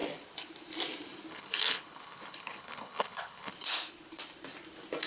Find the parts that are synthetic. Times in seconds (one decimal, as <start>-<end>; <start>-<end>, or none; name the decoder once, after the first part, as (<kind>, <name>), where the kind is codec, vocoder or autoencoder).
1.3-3.5 (codec, HILCodec)